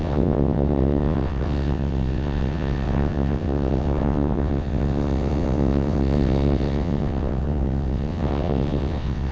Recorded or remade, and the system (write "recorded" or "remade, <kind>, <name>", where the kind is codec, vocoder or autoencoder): remade, vocoder, WaveNeXt